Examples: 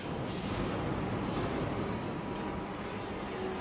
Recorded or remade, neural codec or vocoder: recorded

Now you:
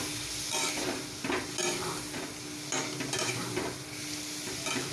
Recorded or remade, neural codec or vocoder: recorded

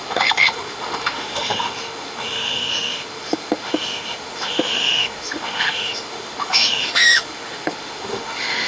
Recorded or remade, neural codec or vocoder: remade, autoencoder, DAC-VAE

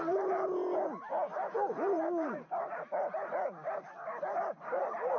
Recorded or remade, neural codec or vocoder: remade, vocoder, BigVGAN v2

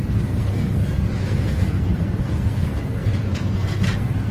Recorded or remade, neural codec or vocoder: remade, codec, SNAC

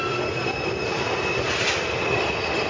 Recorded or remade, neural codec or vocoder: recorded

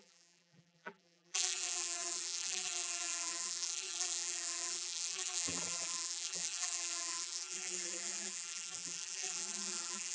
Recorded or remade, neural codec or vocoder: remade, vocoder, BigVGAN v2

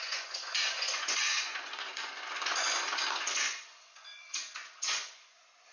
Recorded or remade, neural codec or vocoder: remade, vocoder, Vocos